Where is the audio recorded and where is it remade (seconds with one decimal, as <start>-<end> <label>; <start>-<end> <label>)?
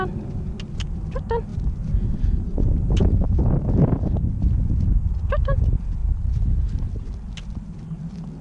0.0-1.5 recorded; 1.5-3.5 remade; 3.5-8.4 recorded